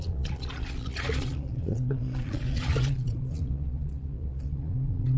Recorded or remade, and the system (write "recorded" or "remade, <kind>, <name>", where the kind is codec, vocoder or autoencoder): remade, vocoder, Vocos